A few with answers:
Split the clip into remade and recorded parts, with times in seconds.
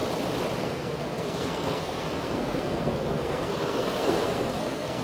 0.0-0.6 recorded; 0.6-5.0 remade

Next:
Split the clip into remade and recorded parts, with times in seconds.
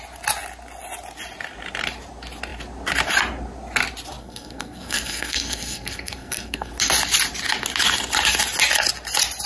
0.0-4.2 recorded; 4.2-6.7 remade; 6.7-9.5 recorded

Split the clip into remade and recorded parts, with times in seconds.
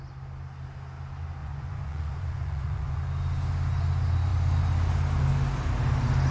0.0-1.4 recorded; 1.4-3.0 remade; 3.0-6.3 recorded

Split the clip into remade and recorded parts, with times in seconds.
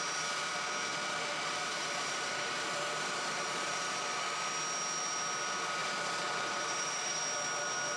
0.0-1.7 recorded; 1.7-4.0 remade; 4.0-5.8 recorded; 5.8-7.2 remade; 7.2-8.0 recorded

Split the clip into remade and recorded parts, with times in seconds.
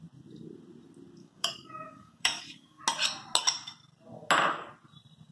0.0-1.2 recorded; 1.2-2.8 remade; 2.8-5.3 recorded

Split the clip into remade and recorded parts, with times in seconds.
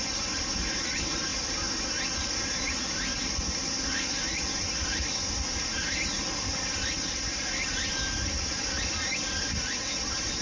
0.0-10.4 recorded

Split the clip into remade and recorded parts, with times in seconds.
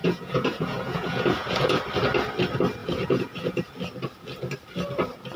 0.0-1.8 remade; 1.8-2.8 recorded; 2.8-3.6 remade; 3.6-5.4 recorded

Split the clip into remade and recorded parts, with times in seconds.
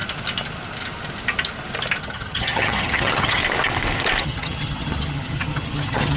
0.0-2.0 recorded; 2.0-3.4 remade; 3.4-4.2 recorded; 4.2-6.2 remade